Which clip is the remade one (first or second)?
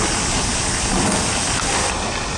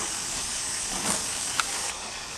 second